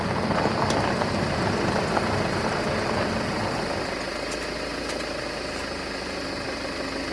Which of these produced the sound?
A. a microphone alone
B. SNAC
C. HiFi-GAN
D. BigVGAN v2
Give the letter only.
A